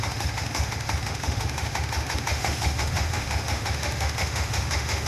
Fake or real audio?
fake